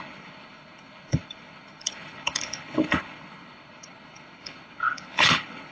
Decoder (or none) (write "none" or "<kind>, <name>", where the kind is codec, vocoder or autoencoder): codec, HILCodec